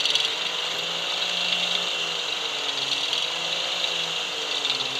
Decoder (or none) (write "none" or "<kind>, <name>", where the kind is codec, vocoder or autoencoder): none